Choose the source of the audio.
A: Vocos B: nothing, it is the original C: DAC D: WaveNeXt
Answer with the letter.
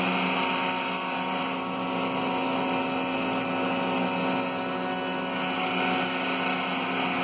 B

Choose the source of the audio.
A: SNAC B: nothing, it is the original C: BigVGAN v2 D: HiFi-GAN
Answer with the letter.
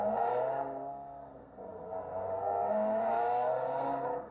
A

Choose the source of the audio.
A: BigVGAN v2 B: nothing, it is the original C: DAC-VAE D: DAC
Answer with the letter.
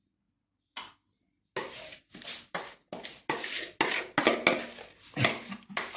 B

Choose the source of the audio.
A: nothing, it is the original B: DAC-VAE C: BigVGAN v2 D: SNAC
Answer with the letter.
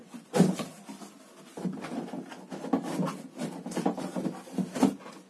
A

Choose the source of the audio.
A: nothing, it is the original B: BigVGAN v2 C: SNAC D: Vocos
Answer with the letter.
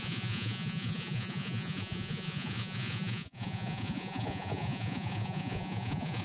D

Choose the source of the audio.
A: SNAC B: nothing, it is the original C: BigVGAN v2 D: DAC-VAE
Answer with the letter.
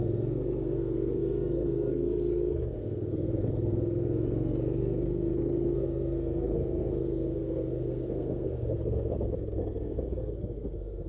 A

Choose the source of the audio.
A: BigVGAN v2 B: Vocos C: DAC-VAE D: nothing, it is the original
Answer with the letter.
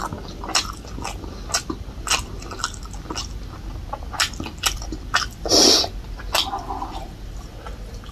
D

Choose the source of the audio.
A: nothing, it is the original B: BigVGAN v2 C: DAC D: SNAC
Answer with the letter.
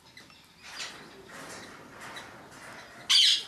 A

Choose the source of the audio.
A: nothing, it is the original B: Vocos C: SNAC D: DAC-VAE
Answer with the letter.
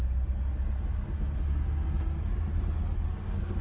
A